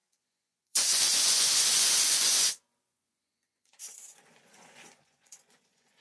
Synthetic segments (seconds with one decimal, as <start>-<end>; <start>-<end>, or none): 0.0-6.0